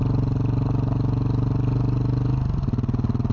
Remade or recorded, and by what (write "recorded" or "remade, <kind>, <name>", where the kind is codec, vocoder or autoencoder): recorded